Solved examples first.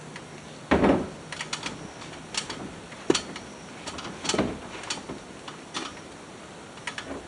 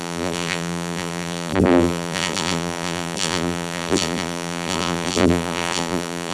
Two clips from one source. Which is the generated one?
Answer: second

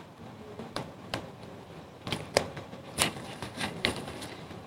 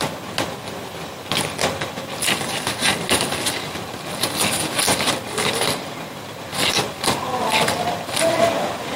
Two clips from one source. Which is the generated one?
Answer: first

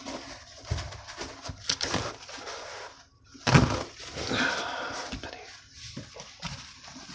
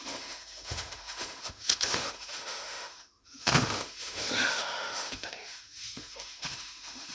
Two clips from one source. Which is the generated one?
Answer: second